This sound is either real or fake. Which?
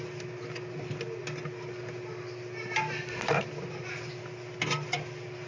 real